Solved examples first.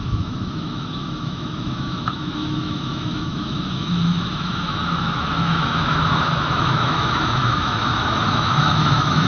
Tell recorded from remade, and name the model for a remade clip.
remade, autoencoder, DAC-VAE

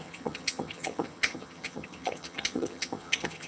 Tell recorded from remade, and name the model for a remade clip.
remade, vocoder, HiFi-GAN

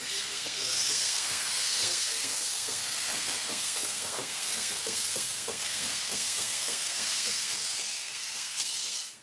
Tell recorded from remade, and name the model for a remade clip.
remade, codec, SNAC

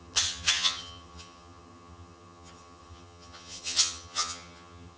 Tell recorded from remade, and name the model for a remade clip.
remade, vocoder, HiFi-GAN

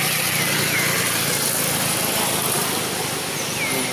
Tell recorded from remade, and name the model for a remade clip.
recorded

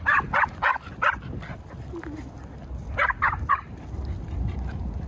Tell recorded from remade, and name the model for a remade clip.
recorded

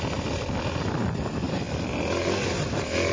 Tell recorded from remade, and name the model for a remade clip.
recorded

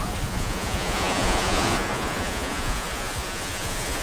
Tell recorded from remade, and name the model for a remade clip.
remade, vocoder, Vocos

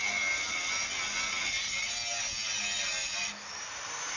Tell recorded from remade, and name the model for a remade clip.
recorded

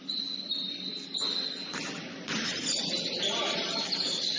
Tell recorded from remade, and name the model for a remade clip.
recorded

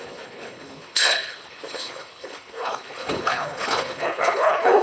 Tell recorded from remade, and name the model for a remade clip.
remade, codec, HILCodec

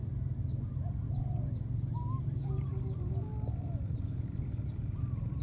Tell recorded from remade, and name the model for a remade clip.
recorded